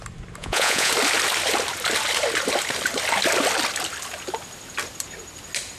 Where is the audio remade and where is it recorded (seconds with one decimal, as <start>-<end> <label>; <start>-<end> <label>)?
0.0-0.4 recorded; 0.4-0.9 remade; 0.9-5.8 recorded